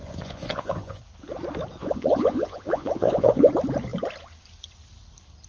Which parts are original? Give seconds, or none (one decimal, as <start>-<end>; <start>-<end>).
1.0-1.8; 3.5-5.5